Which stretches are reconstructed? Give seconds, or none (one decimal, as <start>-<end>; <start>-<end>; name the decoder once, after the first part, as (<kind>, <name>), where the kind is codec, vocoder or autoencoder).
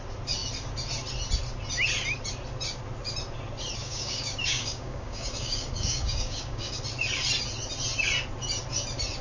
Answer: 3.8-6.8 (codec, DAC)